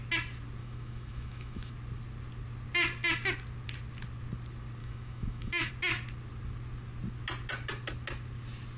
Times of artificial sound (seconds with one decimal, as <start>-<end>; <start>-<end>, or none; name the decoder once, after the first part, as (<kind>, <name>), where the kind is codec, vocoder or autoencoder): 0.6-1.7 (autoencoder, DAC-VAE); 4.8-5.7